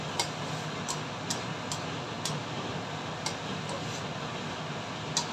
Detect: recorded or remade recorded